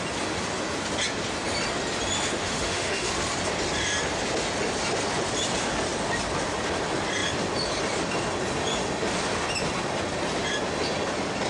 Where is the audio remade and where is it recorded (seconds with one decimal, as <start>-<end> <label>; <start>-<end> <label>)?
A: 0.0-2.4 recorded; 2.4-3.1 remade; 3.1-11.5 recorded